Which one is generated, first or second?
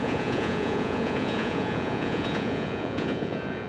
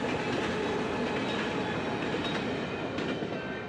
first